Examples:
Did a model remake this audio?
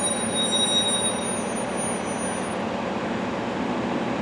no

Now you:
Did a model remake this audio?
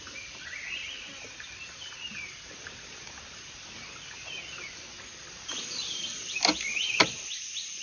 yes